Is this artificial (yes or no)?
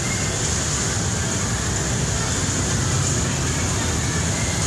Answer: no